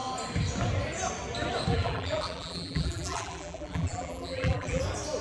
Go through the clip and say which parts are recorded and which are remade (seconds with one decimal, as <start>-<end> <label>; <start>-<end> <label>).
0.0-1.7 recorded; 1.7-4.8 remade; 4.8-5.2 recorded